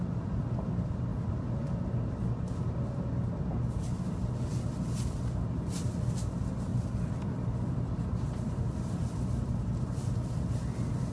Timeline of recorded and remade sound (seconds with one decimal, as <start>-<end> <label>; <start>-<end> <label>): 0.0-6.7 recorded; 6.7-10.1 remade; 10.1-11.1 recorded